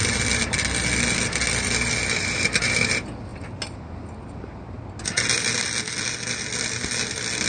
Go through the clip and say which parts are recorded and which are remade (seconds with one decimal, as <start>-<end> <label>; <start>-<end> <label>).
0.0-7.5 recorded